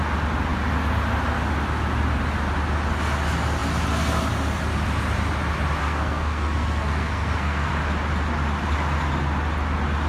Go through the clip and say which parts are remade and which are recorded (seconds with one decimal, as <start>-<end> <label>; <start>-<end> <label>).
0.0-5.8 recorded; 5.8-7.7 remade; 7.7-10.1 recorded